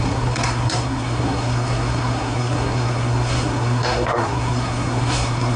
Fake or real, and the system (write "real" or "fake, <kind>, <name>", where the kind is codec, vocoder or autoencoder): fake, codec, SNAC